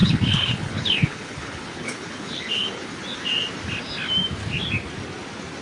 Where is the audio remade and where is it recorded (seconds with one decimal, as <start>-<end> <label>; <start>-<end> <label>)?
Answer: 0.0-3.0 remade; 3.0-5.6 recorded